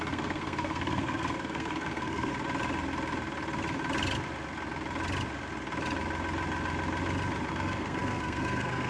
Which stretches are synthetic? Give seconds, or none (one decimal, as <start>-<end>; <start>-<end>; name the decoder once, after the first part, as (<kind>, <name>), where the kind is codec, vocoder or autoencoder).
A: 0.0-2.3 (codec, SNAC); 7.5-8.9